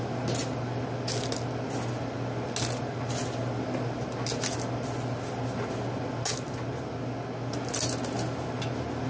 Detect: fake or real real